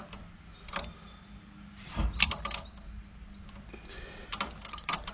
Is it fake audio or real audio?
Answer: real